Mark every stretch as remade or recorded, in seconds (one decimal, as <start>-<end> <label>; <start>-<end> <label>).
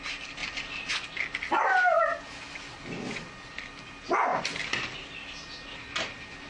0.0-6.5 recorded